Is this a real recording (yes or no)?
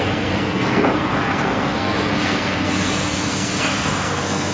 no